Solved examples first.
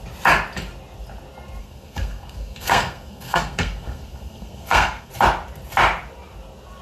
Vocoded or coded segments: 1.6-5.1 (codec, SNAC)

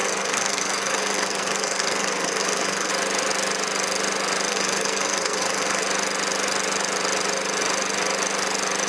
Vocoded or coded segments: 0.0-2.9 (codec, SNAC); 4.5-5.8

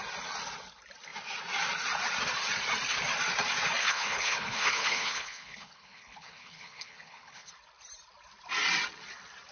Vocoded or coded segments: 3.8-7.5 (codec, HILCodec)

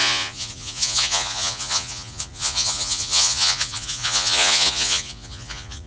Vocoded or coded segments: 0.0-5.9 (vocoder, Vocos)